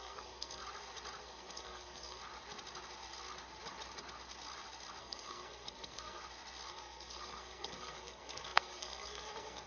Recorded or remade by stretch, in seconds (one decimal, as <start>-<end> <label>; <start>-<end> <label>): 0.0-0.6 remade; 0.6-1.2 recorded; 1.2-2.2 remade; 2.2-5.0 recorded; 5.0-6.2 remade; 6.2-6.7 recorded; 6.7-9.7 remade